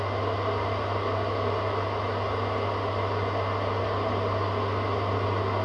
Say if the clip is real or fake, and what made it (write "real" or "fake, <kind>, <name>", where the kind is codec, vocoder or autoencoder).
real